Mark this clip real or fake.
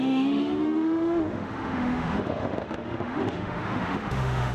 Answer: fake